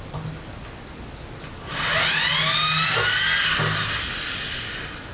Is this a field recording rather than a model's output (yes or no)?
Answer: yes